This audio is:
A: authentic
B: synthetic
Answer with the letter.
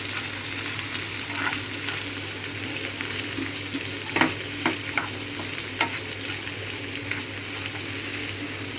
A